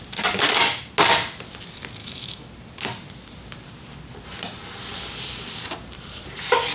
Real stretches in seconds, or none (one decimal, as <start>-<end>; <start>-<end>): 0.0-2.0; 2.5-6.7